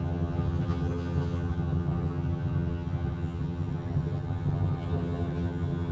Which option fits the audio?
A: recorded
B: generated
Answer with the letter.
B